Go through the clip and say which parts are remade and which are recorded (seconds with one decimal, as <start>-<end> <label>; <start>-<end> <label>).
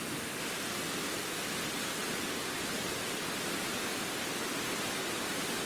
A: 0.0-5.7 recorded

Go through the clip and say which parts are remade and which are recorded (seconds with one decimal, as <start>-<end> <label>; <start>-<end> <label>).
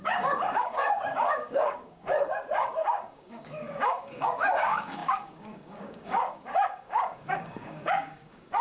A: 0.0-8.6 remade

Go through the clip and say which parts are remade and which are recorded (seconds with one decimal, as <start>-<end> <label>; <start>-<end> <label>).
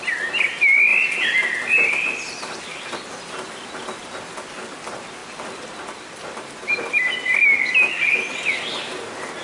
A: 0.0-0.9 recorded; 0.9-3.0 remade; 3.0-5.2 recorded; 5.2-8.3 remade; 8.3-9.4 recorded